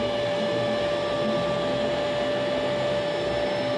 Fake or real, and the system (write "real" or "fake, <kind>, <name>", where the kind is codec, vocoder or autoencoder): real